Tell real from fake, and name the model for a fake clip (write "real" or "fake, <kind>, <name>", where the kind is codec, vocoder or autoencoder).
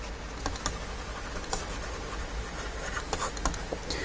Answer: real